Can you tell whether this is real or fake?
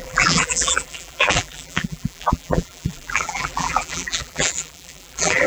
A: fake